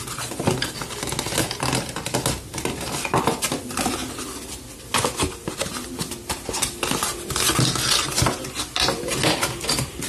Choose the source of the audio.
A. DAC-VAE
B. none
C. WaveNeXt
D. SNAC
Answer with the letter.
B